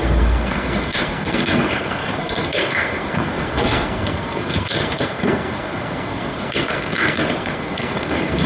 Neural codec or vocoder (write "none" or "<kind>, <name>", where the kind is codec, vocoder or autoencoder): codec, SNAC